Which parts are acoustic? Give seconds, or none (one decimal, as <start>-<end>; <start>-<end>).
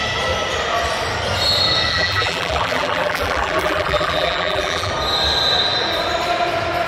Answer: 0.0-1.9; 4.9-6.9